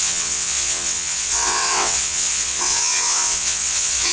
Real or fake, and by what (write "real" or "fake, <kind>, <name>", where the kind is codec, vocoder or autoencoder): fake, vocoder, WaveNeXt